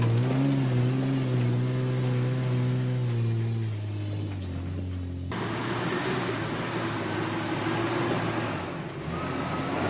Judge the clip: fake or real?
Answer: real